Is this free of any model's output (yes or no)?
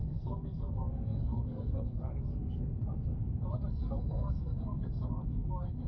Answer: no